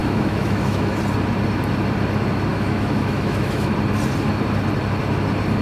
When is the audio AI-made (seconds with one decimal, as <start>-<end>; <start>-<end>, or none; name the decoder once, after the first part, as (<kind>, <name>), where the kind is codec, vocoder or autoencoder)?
0.0-1.0 (autoencoder, DAC-VAE); 2.5-3.7